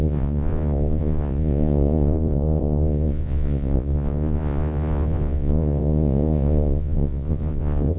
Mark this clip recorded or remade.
remade